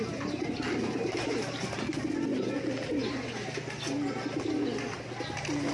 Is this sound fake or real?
real